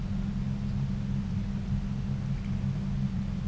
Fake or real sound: real